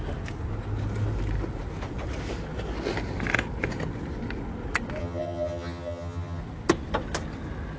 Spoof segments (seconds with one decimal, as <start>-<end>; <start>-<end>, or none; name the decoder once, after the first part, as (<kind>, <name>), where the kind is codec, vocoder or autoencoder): 5.0-6.4 (vocoder, HiFi-GAN)